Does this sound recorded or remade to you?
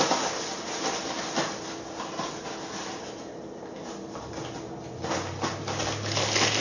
recorded